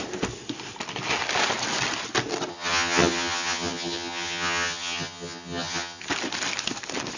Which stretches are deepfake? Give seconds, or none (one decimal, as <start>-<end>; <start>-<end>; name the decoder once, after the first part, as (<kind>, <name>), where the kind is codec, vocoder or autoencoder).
2.5-6.0 (vocoder, HiFi-GAN)